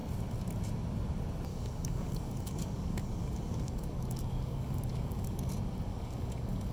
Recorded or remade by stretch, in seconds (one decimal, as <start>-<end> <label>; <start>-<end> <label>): 0.0-1.5 recorded; 1.5-5.5 remade; 5.5-5.9 recorded; 5.9-6.7 remade